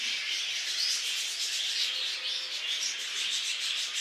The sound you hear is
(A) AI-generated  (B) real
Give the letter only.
B